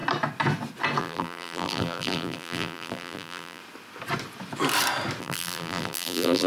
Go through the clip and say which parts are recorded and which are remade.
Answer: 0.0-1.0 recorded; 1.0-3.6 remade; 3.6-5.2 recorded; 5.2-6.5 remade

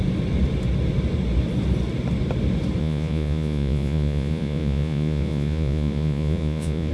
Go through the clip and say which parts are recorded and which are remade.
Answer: 0.0-2.8 recorded; 2.8-6.9 remade

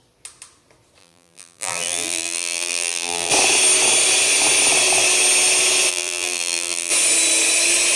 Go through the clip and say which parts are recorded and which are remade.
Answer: 0.0-1.0 recorded; 1.0-3.3 remade; 3.3-5.9 recorded; 5.9-6.9 remade; 6.9-8.0 recorded

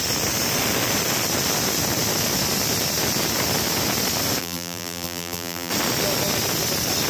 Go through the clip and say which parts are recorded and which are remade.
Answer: 0.0-4.4 recorded; 4.4-5.7 remade; 5.7-7.1 recorded

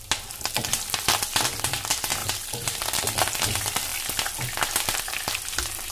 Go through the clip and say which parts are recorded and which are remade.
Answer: 0.0-2.2 recorded; 2.2-3.4 remade; 3.4-5.9 recorded

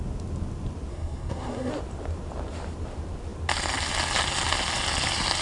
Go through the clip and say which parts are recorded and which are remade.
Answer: 0.0-0.9 recorded; 0.9-1.7 remade; 1.7-5.4 recorded

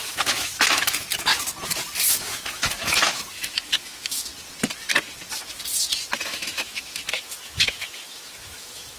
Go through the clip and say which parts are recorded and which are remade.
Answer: 0.0-1.3 remade; 1.3-2.1 recorded; 2.1-4.3 remade; 4.3-6.2 recorded; 6.2-9.0 remade